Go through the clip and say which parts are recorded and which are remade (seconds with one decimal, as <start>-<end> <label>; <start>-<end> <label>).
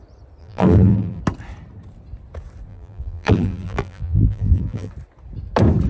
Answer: 0.0-0.4 recorded; 0.4-1.2 remade; 1.2-2.7 recorded; 2.7-4.9 remade; 4.9-5.9 recorded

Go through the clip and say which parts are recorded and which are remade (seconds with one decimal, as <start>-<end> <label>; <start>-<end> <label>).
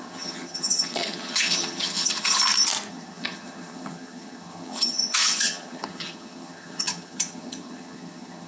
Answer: 0.0-2.4 remade; 2.4-2.9 recorded; 2.9-8.5 remade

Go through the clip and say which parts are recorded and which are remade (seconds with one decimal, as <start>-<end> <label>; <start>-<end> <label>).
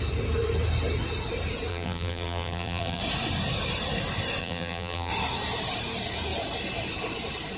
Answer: 0.0-1.7 recorded; 1.7-3.0 remade; 3.0-4.4 recorded; 4.4-5.1 remade; 5.1-7.6 recorded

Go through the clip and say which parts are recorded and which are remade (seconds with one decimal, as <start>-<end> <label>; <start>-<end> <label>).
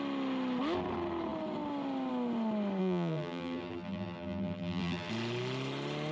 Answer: 0.0-2.8 recorded; 2.8-5.1 remade; 5.1-6.1 recorded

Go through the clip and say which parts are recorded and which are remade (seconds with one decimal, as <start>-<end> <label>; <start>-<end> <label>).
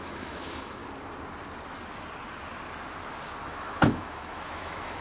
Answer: 0.0-0.8 remade; 0.8-3.5 recorded; 3.5-5.0 remade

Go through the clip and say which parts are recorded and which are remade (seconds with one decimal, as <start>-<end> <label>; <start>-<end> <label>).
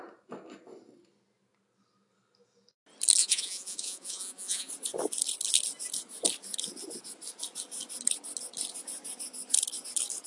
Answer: 0.0-3.2 recorded; 3.2-4.7 remade; 4.7-10.3 recorded